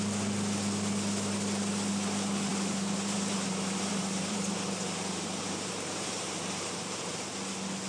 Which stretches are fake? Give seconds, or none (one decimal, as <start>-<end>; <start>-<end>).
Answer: 2.5-7.1

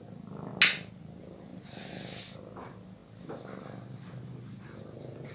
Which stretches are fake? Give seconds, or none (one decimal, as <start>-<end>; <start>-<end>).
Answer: none

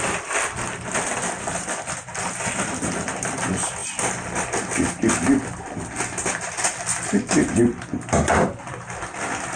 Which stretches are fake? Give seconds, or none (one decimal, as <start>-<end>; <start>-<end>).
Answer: none

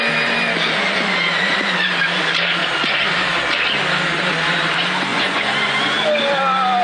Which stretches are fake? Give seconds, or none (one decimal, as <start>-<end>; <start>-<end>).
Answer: 5.1-6.0

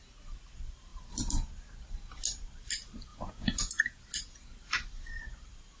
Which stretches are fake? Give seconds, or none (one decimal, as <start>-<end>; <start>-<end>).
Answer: 3.1-4.0